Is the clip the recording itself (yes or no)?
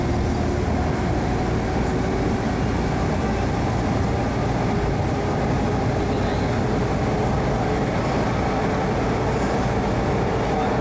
yes